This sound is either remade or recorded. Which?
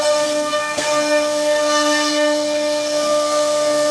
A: remade